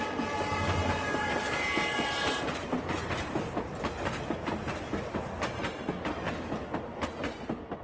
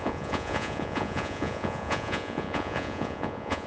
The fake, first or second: second